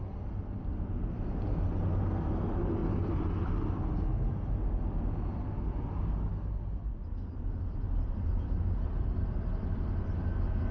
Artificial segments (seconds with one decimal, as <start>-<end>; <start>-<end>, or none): none

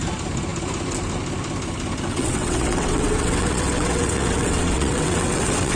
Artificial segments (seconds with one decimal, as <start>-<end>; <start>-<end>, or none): 2.1-5.8

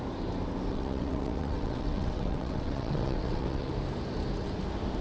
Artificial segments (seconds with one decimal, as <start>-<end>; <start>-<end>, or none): 0.7-3.7

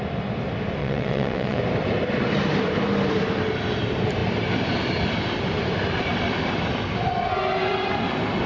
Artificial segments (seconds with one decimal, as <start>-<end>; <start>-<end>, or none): 0.8-1.6

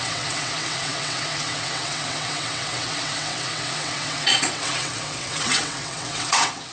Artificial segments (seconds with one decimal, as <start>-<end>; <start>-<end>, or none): 0.0-6.7